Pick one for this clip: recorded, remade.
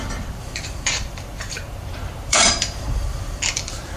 remade